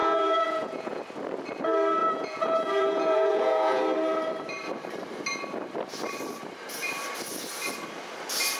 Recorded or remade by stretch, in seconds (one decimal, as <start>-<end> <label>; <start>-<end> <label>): 0.0-1.0 remade; 1.0-2.0 recorded; 2.0-3.8 remade; 3.8-8.6 recorded